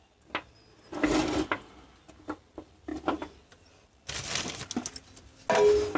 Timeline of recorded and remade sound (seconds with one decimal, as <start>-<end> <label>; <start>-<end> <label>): 0.0-6.0 recorded

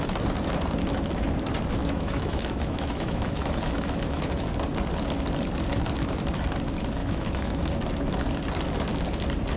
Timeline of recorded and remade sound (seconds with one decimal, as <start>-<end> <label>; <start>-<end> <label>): 0.0-1.8 recorded; 1.8-4.2 remade; 4.2-7.0 recorded; 7.0-7.6 remade; 7.6-9.6 recorded